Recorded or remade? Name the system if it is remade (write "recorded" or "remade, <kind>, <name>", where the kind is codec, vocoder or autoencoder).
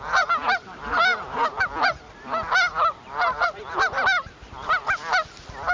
recorded